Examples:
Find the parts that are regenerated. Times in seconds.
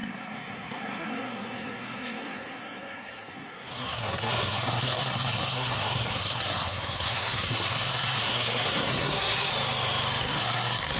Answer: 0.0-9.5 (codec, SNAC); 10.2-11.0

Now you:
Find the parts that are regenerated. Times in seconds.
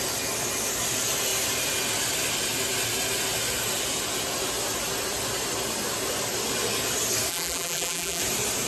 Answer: 7.3-8.2 (vocoder, BigVGAN v2)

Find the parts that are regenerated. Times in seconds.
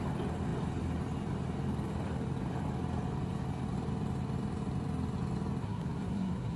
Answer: 5.6-6.6 (codec, SNAC)